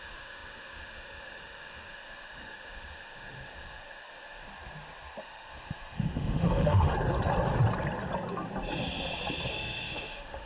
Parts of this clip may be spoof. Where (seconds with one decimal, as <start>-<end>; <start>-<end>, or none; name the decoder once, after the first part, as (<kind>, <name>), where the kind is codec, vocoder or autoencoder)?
0.0-4.4 (autoencoder, DAC-VAE); 5.2-6.9; 9.5-10.5